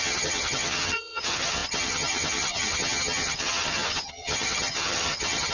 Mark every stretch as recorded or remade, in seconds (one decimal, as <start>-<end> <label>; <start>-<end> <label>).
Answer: 0.0-5.5 remade